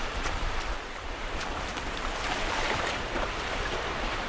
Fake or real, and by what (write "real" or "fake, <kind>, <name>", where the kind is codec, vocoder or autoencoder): fake, vocoder, BigVGAN v2